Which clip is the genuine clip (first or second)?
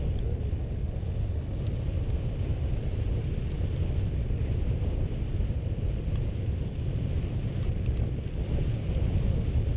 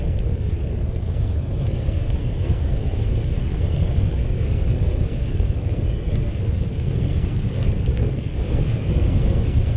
first